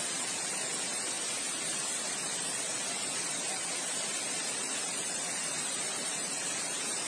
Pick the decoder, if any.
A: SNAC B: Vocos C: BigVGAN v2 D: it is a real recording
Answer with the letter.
D